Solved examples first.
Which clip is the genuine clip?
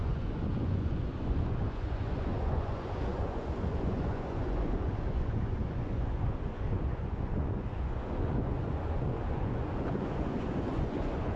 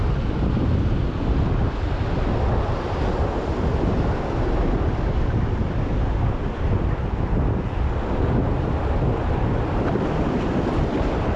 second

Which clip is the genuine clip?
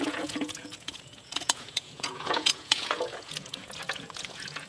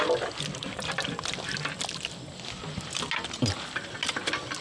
second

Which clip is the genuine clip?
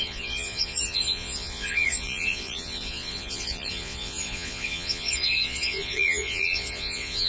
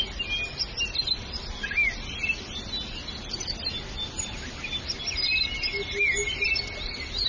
second